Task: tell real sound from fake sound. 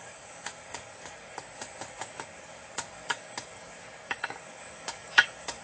fake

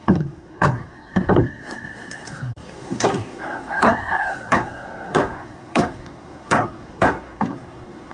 fake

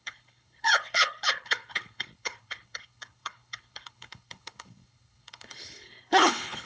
fake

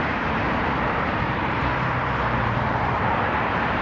fake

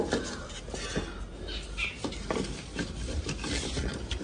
real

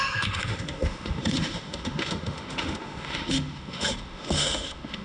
fake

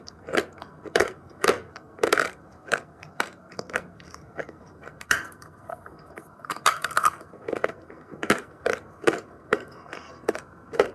fake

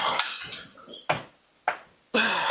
real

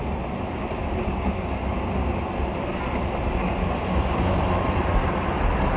real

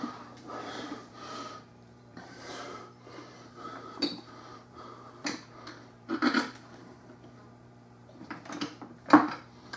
fake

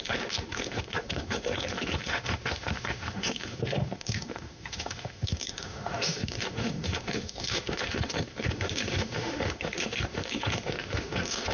fake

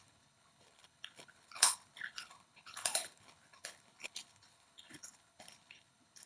fake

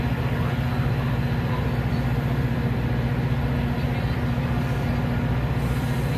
real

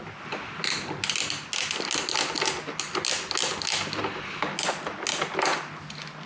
real